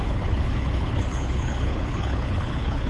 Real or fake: fake